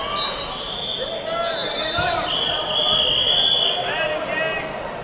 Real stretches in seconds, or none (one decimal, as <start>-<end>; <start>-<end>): 0.0-1.6; 2.4-5.0